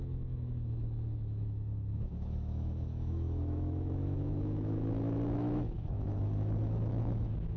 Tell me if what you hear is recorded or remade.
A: remade